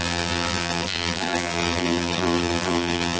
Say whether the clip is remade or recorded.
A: remade